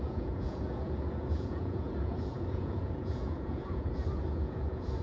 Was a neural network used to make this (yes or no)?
yes